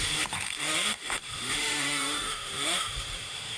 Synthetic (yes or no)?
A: yes